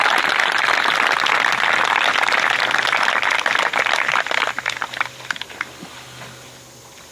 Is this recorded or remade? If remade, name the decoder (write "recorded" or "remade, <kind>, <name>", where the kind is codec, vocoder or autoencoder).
recorded